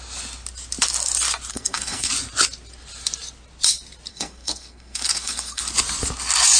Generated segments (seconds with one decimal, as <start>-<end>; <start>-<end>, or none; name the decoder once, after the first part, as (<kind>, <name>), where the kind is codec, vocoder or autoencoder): 1.5-2.1 (codec, SNAC); 4.1-5.6